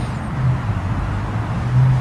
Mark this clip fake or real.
real